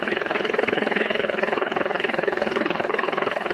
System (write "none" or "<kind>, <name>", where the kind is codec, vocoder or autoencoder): codec, HILCodec